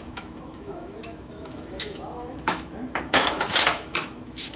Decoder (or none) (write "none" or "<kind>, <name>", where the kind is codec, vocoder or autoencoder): autoencoder, DAC-VAE